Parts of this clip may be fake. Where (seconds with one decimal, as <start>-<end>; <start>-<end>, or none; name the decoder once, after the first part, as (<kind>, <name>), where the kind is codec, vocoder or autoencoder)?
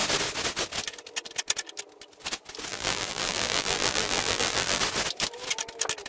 2.7-4.8 (vocoder, BigVGAN v2)